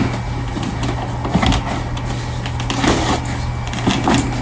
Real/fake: real